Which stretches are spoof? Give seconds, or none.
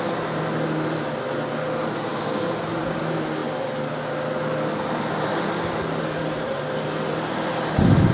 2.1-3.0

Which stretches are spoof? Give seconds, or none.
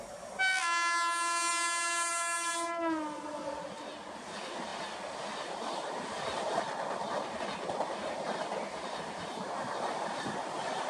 none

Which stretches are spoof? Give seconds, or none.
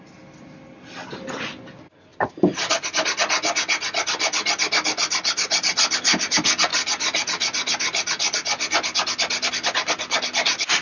none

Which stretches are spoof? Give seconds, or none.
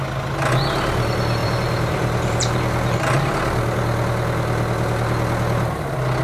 1.4-3.3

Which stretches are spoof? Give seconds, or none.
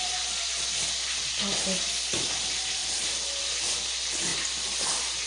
0.0-5.3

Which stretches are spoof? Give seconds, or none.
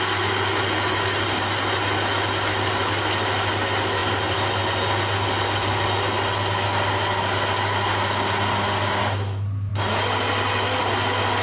none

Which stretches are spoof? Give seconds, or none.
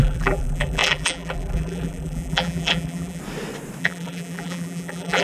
0.0-3.2; 3.8-5.2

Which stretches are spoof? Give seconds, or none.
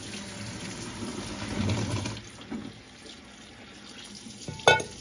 none